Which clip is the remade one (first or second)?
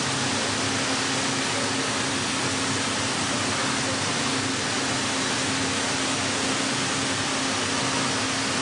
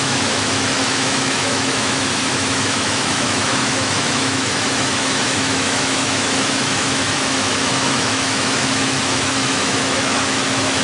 second